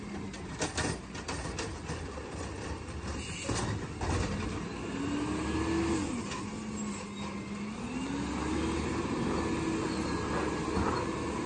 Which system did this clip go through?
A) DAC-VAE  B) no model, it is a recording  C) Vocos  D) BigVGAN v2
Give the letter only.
B